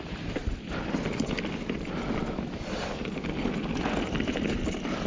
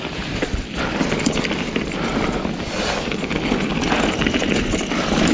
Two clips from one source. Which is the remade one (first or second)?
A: first